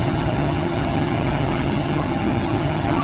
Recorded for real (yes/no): no